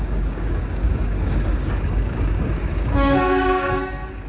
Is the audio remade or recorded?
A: remade